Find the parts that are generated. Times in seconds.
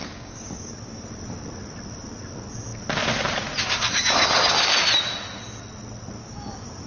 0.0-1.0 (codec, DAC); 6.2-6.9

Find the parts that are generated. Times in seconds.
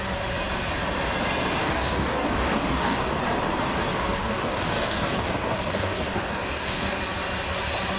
1.6-3.2 (codec, DAC); 3.9-7.0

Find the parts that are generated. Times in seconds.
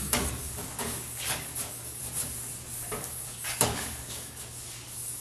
0.0-2.0 (codec, DAC); 2.9-5.2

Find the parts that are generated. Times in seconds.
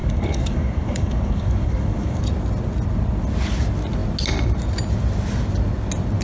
0.0-2.2 (codec, DAC)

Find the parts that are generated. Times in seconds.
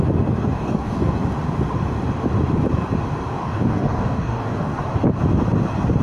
0.6-1.1 (codec, DAC); 3.3-4.8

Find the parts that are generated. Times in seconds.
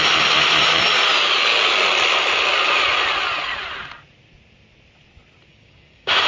5.5-6.3 (codec, DAC)